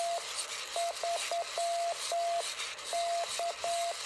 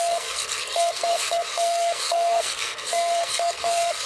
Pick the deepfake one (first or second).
second